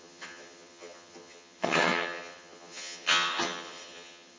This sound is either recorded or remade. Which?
remade